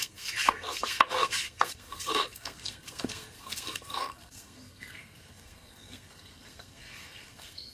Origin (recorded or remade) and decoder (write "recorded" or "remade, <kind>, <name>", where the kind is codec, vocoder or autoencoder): remade, codec, SNAC